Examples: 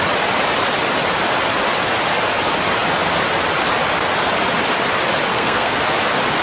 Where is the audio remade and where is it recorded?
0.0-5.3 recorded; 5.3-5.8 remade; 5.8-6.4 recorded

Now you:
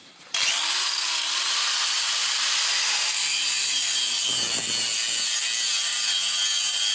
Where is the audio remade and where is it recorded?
0.0-2.2 recorded; 2.2-4.7 remade; 4.7-6.9 recorded

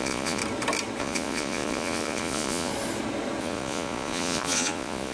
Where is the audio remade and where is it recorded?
0.0-0.4 remade; 0.4-1.0 recorded; 1.0-2.7 remade; 2.7-3.4 recorded; 3.4-5.1 remade

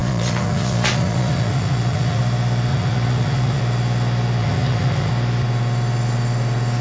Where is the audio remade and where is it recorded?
0.0-2.2 remade; 2.2-2.7 recorded; 2.7-3.6 remade; 3.6-4.4 recorded; 4.4-5.1 remade; 5.1-6.8 recorded

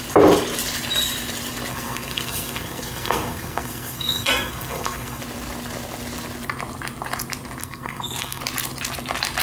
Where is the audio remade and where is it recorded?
0.0-1.7 recorded; 1.7-5.2 remade; 5.2-7.6 recorded; 7.6-8.4 remade; 8.4-9.4 recorded

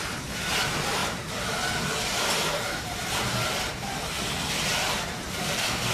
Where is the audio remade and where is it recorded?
0.0-5.4 recorded; 5.4-5.9 remade